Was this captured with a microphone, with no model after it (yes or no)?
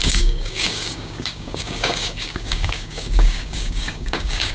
no